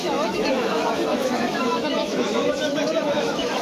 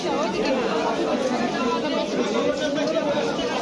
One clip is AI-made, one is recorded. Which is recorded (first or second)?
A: second